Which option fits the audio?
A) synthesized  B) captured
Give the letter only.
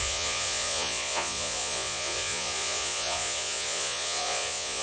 A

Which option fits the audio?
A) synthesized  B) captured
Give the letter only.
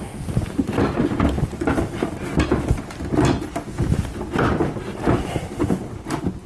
B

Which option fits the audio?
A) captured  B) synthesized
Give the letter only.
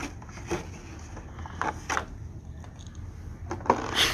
A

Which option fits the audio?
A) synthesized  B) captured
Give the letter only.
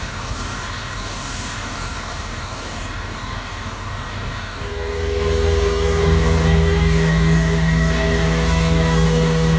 A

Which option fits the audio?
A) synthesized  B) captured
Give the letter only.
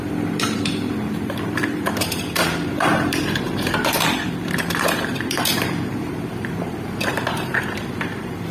A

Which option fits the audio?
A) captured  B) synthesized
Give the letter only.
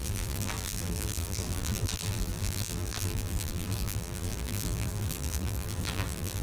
B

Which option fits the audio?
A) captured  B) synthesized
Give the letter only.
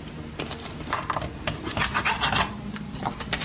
A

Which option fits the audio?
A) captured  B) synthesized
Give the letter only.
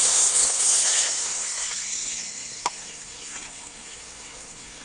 B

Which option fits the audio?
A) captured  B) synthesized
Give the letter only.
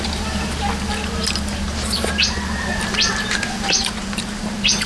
A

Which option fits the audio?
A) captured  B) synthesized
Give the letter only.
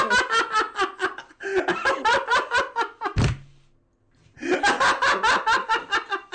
A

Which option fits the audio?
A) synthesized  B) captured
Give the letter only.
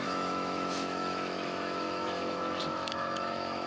A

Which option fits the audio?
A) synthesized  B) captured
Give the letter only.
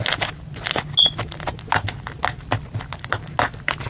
B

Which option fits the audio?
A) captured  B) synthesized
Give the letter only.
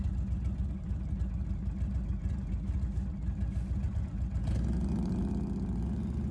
A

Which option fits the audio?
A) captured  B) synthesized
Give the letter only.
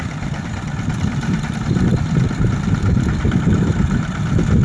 A